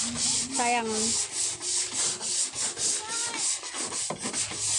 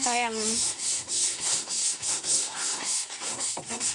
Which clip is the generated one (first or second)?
second